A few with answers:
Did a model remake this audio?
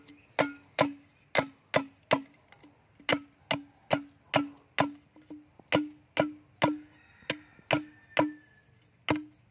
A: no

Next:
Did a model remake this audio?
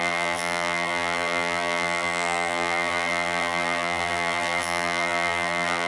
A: yes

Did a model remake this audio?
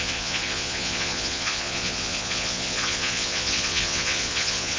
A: yes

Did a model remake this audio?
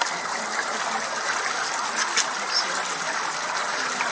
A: no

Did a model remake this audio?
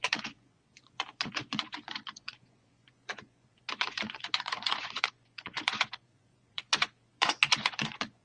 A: yes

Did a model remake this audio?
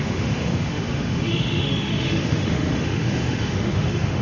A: yes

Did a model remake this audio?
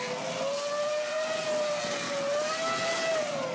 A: no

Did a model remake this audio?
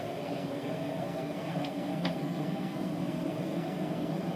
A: yes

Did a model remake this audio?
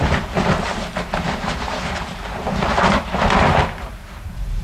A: yes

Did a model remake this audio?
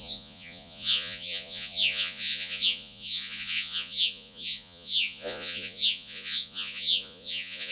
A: yes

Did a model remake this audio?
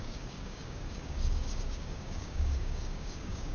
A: yes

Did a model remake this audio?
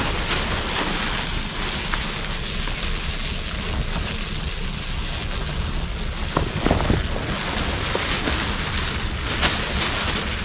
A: no